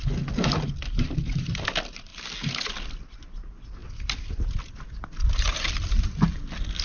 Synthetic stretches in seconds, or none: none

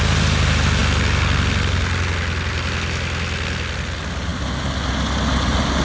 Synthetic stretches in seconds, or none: none

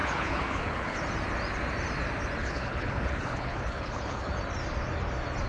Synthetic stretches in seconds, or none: 0.0-1.0 (codec, HILCodec); 2.4-4.3

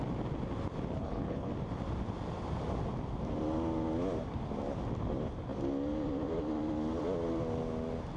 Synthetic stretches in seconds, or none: 1.0-1.5 (codec, HILCodec)

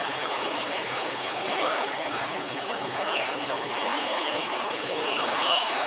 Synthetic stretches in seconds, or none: 0.0-5.9 (codec, HILCodec)

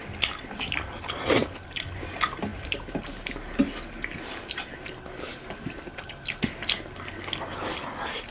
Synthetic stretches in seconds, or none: none